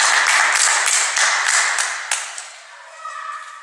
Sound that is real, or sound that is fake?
real